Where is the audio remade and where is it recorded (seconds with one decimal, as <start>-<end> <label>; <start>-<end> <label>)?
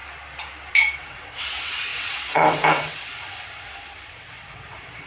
0.0-1.0 recorded; 1.0-5.1 remade